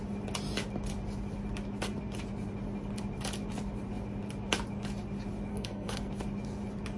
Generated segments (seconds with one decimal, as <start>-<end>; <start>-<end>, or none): 5.5-6.1